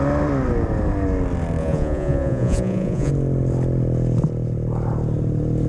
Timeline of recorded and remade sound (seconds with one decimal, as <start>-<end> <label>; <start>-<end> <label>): 0.0-1.6 recorded; 1.6-3.1 remade; 3.1-5.7 recorded